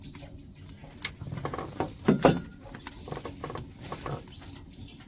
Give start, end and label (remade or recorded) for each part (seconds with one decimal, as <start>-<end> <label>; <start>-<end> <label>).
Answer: 0.0-5.1 recorded